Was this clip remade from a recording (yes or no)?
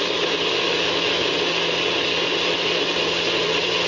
no